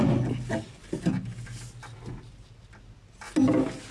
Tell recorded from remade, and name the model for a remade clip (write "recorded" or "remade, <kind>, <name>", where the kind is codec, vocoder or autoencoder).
recorded